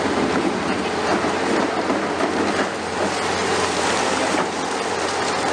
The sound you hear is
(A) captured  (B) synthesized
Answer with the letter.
A